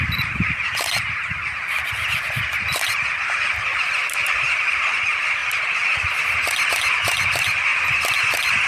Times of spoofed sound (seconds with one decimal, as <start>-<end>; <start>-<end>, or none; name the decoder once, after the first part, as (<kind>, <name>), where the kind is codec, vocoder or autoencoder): 0.0-5.4 (vocoder, BigVGAN v2); 6.7-7.7